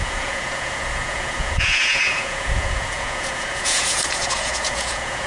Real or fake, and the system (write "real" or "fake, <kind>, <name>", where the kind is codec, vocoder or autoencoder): fake, vocoder, Vocos